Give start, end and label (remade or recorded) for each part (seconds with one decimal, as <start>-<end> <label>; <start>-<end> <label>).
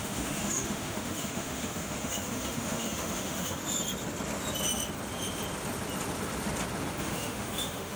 0.0-3.6 remade; 3.6-7.0 recorded; 7.0-8.0 remade